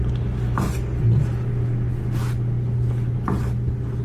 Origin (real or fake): real